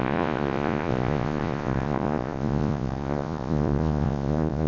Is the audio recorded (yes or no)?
no